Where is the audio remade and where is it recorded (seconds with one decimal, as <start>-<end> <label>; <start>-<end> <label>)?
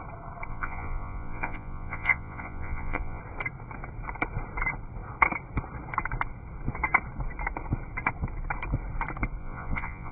0.0-0.5 recorded; 0.5-3.2 remade; 3.2-9.4 recorded; 9.4-10.1 remade